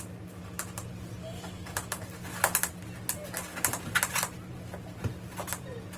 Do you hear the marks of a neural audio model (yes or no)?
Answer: no